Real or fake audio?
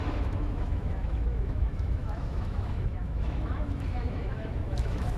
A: fake